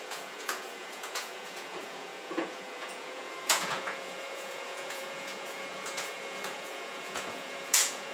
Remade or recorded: remade